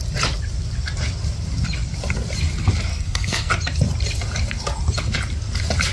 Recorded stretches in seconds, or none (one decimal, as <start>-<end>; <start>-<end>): 0.0-2.9; 3.5-5.9